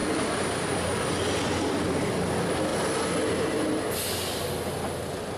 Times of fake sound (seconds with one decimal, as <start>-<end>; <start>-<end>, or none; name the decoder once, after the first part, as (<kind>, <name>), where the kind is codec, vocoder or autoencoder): 0.0-1.0 (vocoder, BigVGAN v2)